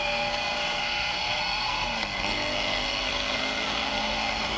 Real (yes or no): no